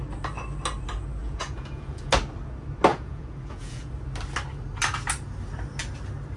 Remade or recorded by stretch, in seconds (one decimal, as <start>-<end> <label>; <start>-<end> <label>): 0.0-1.2 recorded; 1.2-2.1 remade; 2.1-2.9 recorded; 2.9-3.9 remade; 3.9-6.4 recorded